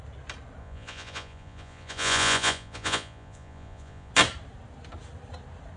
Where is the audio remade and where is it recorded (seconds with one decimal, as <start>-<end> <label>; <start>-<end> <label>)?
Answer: 0.0-0.6 recorded; 0.6-4.1 remade; 4.1-5.8 recorded